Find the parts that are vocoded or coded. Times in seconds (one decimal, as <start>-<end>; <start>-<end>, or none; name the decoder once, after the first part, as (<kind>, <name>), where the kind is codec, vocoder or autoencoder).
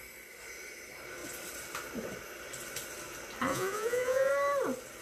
3.5-4.3 (vocoder, Vocos)